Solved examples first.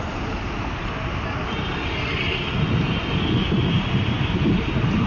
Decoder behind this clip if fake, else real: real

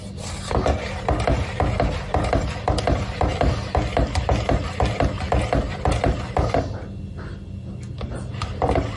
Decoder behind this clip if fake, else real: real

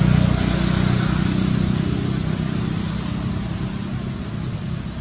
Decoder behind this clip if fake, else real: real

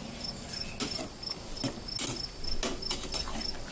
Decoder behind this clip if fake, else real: real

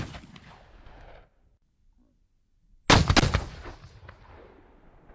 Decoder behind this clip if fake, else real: real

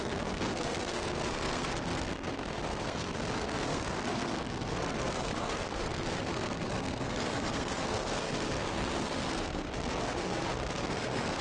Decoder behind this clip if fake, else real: fake, codec, SNAC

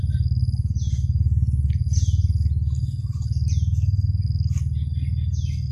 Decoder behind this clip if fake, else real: real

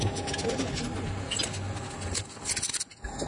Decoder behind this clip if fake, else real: real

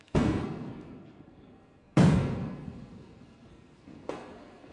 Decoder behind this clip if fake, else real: fake, codec, SNAC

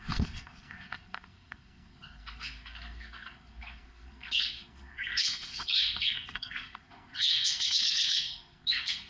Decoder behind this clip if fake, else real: fake, codec, SNAC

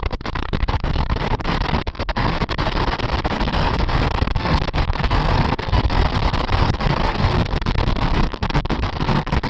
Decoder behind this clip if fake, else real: fake, codec, SNAC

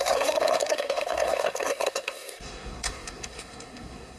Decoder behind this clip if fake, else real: fake, codec, SNAC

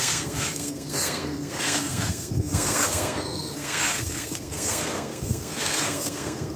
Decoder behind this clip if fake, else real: fake, codec, SNAC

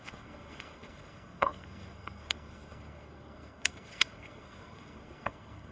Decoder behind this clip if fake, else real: fake, codec, SNAC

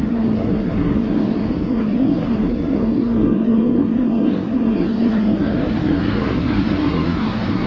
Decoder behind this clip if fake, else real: fake, codec, SNAC